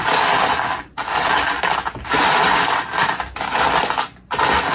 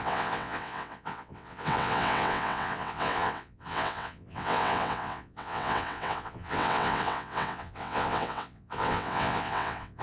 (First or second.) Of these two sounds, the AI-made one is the second